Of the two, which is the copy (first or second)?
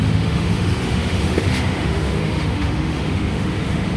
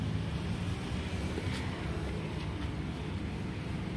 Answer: first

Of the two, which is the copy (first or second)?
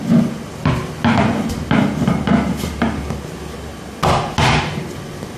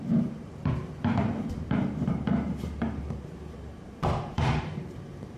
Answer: second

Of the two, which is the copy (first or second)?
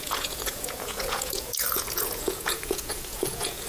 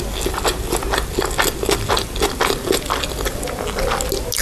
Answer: first